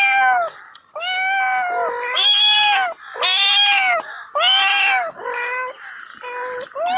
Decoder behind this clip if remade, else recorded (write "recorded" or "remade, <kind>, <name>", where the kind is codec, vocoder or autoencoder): recorded